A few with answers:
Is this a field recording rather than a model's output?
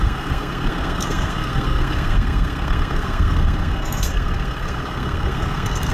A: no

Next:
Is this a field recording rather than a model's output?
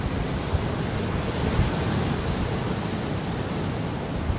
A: yes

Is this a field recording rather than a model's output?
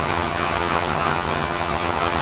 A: no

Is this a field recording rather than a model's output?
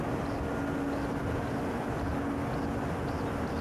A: yes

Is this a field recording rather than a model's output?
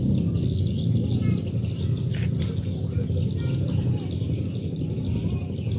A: yes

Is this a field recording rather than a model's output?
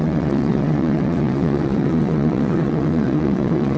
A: no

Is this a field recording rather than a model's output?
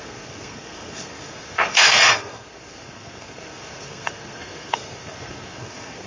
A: no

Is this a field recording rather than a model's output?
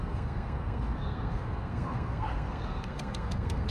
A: no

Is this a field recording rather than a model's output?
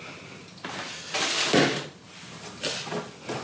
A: yes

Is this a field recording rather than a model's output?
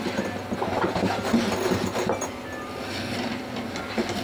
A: yes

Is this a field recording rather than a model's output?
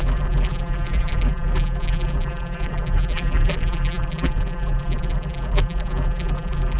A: no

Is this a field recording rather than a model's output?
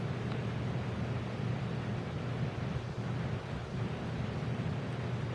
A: yes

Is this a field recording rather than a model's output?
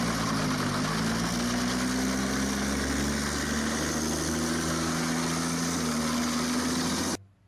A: yes